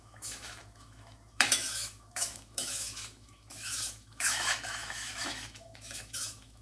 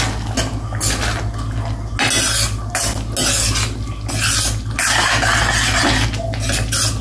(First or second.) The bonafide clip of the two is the second